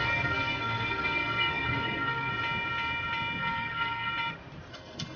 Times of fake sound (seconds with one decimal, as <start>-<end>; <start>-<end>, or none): 0.0-2.3; 3.4-4.1; 4.7-5.2